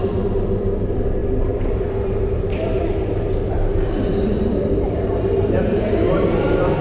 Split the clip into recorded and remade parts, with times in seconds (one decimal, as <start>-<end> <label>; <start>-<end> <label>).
0.0-6.8 remade